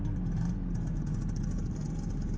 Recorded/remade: recorded